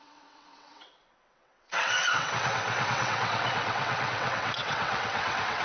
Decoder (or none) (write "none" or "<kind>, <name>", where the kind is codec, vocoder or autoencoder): vocoder, WaveNeXt